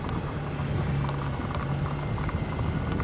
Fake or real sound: real